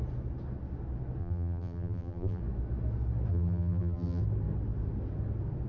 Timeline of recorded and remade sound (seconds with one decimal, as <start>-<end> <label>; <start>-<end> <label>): 0.0-1.2 recorded; 1.2-2.4 remade; 2.4-3.3 recorded; 3.3-4.2 remade; 4.2-5.7 recorded